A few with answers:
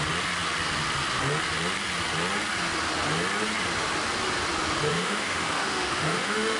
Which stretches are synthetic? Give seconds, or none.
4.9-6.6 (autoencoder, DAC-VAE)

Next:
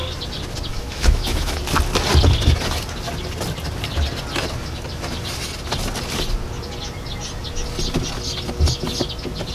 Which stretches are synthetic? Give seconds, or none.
0.7-1.6 (autoencoder, DAC-VAE)

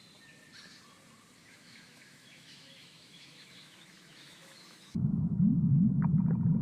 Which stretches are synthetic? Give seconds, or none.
1.4-5.4 (autoencoder, DAC-VAE)

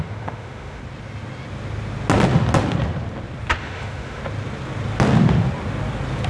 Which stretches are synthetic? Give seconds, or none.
0.0-0.8 (autoencoder, DAC-VAE); 3.6-4.2

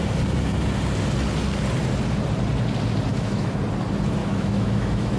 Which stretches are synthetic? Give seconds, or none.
3.1-3.6 (autoencoder, DAC-VAE); 4.2-5.2

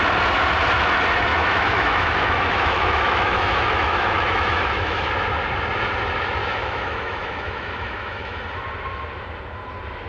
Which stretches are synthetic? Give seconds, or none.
1.3-5.1 (autoencoder, DAC-VAE); 6.4-8.4

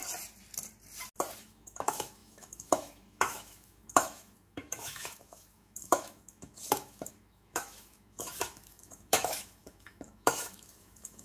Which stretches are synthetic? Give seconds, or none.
1.4-11.2 (autoencoder, DAC-VAE)

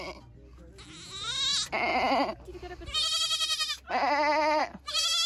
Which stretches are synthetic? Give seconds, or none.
none